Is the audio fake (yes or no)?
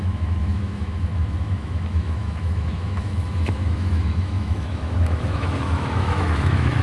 yes